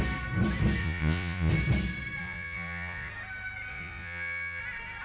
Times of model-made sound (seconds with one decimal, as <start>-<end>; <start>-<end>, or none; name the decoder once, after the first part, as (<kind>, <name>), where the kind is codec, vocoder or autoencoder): 0.8-1.5 (vocoder, Vocos); 2.2-3.1; 3.7-4.6